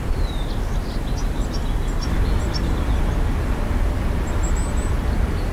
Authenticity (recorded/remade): remade